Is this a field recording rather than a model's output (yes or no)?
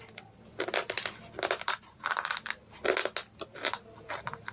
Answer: yes